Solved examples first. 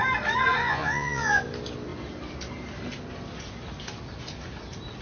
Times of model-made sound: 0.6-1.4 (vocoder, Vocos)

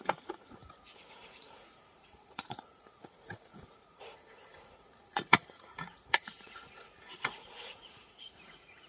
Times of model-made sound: 0.0-8.9 (vocoder, Vocos)

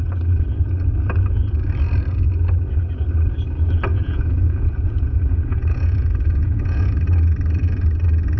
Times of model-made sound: 3.9-7.0 (vocoder, Vocos)

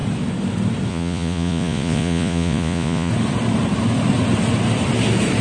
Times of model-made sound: 0.9-3.1 (vocoder, Vocos)

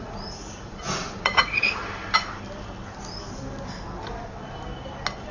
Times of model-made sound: 0.0-1.8 (vocoder, Vocos)

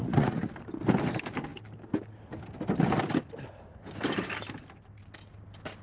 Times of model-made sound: 0.0-0.5 (vocoder, Vocos)

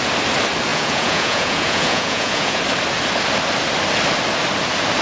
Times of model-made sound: 0.7-2.6 (vocoder, Vocos)

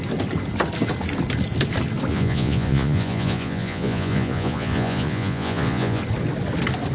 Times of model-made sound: 2.1-6.0 (vocoder, Vocos)